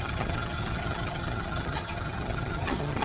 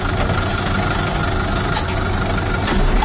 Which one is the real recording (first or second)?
second